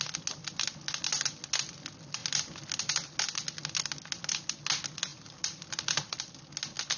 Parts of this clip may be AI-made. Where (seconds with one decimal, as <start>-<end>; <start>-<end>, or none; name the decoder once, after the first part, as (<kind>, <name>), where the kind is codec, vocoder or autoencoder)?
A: 5.1-6.4 (vocoder, BigVGAN v2)